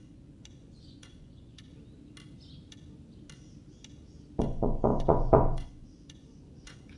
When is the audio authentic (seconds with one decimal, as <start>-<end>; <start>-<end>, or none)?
1.7-4.4